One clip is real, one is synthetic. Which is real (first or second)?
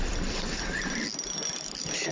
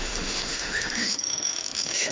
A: first